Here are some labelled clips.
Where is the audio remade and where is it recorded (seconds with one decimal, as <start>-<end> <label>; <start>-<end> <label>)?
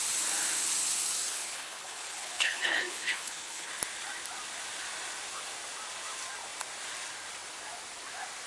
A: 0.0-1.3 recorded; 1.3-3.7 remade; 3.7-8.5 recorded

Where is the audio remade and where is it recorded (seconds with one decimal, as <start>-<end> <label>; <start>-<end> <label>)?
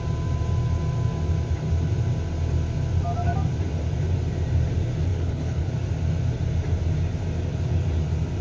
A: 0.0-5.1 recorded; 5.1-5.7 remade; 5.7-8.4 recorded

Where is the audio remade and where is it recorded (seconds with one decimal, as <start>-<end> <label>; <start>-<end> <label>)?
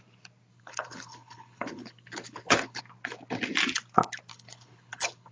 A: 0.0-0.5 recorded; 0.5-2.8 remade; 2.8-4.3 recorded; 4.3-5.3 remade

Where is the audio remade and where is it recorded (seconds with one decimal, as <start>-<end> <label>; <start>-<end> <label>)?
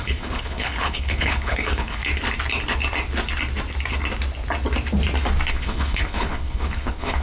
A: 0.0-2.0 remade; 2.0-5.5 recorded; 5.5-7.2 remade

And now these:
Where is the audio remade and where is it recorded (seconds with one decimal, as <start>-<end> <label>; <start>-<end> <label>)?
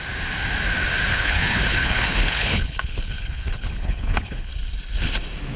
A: 0.0-1.1 recorded; 1.1-4.5 remade; 4.5-5.6 recorded